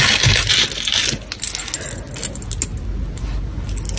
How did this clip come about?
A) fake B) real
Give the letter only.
B